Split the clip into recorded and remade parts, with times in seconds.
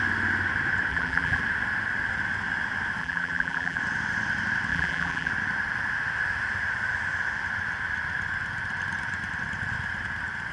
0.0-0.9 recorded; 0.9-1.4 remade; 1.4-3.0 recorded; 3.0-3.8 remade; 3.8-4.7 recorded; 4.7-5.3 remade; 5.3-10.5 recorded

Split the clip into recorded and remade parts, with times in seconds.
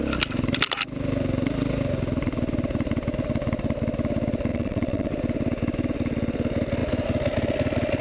0.0-4.5 recorded; 4.5-5.1 remade; 5.1-8.0 recorded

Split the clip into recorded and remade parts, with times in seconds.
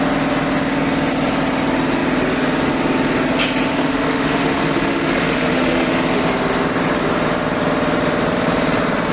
0.0-3.7 recorded; 3.7-5.9 remade; 5.9-9.1 recorded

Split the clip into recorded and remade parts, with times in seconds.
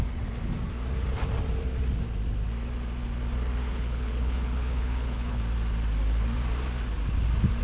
0.0-3.6 recorded; 3.6-5.4 remade; 5.4-7.6 recorded